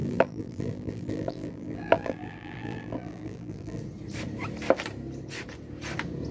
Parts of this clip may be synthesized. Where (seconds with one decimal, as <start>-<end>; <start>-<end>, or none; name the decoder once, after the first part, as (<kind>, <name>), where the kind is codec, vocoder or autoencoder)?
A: 0.0-3.8 (vocoder, BigVGAN v2)